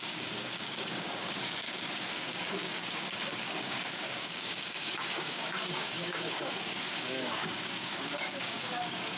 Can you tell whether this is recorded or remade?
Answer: remade